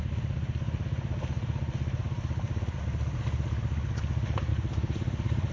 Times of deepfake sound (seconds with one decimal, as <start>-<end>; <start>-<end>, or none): 4.5-5.5